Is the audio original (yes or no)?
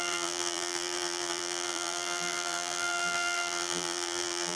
no